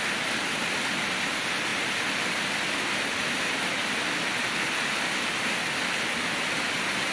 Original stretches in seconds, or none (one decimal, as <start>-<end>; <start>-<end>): 0.0-7.1